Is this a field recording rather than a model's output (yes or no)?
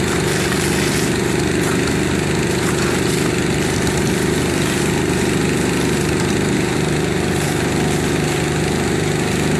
yes